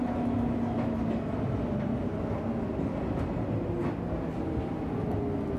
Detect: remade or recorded recorded